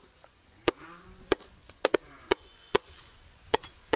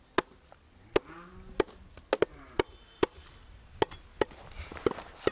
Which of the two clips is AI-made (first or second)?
first